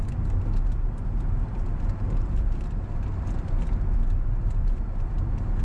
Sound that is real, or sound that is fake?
real